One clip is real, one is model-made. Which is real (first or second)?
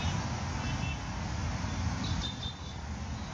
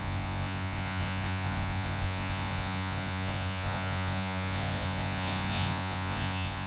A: first